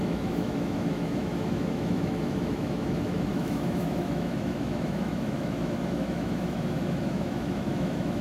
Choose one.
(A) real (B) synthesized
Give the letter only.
B